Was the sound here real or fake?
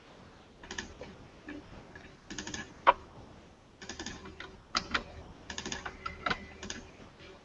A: real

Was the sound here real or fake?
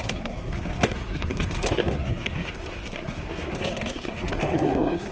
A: fake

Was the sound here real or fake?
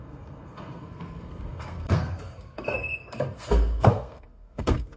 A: fake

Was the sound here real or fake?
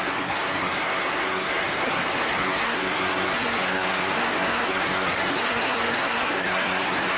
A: fake